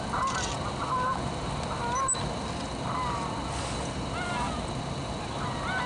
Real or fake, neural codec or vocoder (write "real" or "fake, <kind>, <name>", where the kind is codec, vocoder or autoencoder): real